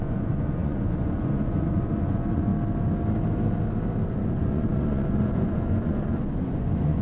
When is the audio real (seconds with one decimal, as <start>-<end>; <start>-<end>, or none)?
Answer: 2.5-4.1